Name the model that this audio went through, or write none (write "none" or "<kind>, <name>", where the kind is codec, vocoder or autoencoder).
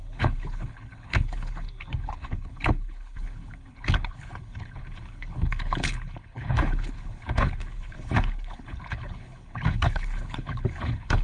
codec, HILCodec